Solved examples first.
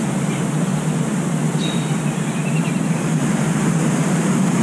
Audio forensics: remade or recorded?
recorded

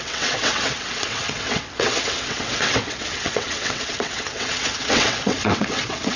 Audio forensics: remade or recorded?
remade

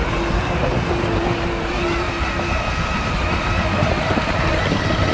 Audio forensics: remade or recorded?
recorded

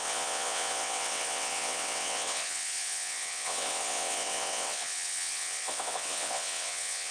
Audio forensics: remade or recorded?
remade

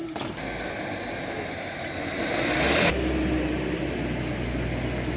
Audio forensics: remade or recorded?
recorded